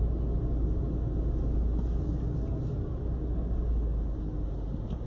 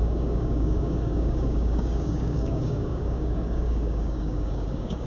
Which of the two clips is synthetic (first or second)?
second